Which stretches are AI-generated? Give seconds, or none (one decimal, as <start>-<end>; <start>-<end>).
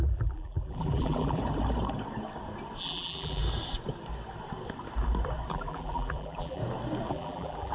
0.0-1.4; 2.8-3.4; 5.5-6.6; 7.1-7.7